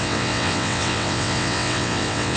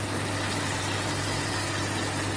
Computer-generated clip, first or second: first